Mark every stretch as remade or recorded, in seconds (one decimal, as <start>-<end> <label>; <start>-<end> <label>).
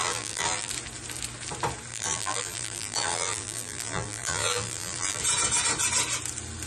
0.0-0.7 remade; 0.7-1.9 recorded; 1.9-5.2 remade; 5.2-6.7 recorded